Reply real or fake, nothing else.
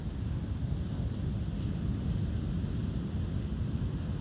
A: real